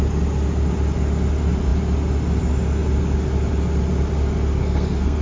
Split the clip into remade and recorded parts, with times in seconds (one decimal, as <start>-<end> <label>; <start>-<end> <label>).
0.0-4.6 recorded; 4.6-5.2 remade